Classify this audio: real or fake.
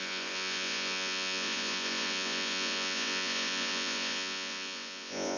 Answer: fake